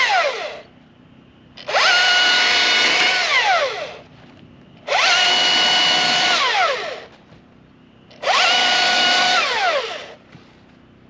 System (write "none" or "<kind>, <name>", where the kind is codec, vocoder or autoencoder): none